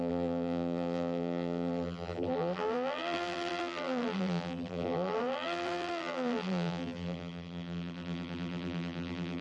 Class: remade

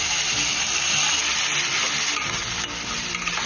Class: recorded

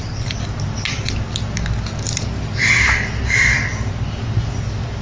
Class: recorded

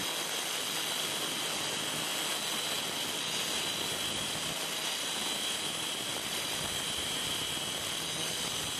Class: recorded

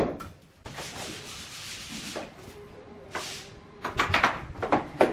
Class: recorded